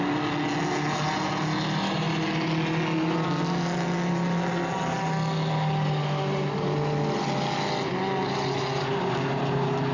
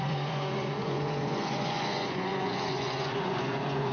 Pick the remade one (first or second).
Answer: second